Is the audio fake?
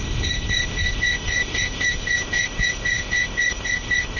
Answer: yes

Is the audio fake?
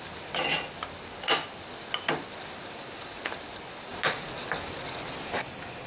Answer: no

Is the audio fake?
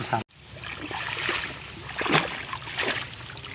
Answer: no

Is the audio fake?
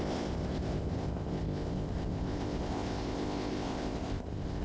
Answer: yes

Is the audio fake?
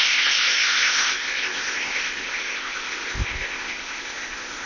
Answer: yes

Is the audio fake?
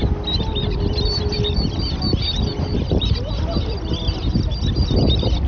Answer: no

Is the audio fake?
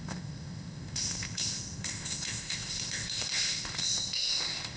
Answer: yes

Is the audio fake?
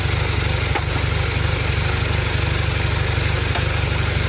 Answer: no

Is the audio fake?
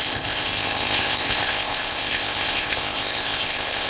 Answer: yes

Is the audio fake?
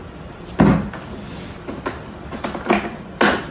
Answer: no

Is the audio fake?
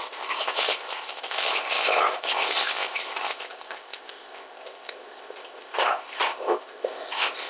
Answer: yes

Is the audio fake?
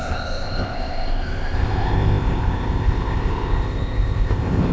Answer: yes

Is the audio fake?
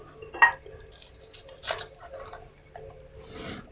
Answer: no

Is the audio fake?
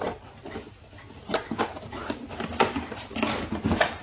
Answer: no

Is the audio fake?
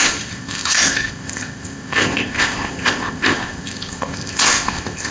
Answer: yes